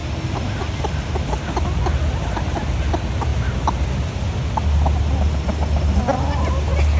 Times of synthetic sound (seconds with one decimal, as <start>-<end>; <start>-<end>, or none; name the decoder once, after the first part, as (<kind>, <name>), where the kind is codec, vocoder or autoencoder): none